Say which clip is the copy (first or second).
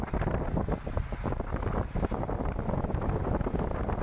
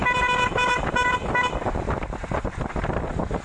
second